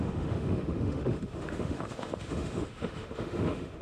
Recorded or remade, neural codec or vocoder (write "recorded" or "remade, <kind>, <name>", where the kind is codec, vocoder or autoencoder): remade, autoencoder, DAC-VAE